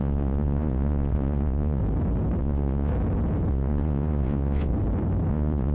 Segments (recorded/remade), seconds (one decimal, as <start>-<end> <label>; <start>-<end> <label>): 0.0-1.8 remade; 1.8-2.4 recorded; 2.4-2.9 remade; 2.9-3.5 recorded; 3.5-4.7 remade; 4.7-5.3 recorded; 5.3-5.7 remade